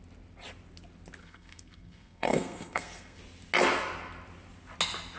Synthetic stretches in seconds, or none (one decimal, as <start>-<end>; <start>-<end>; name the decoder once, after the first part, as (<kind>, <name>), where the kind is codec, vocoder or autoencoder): 1.2-3.2 (codec, SNAC)